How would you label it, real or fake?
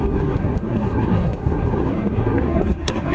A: fake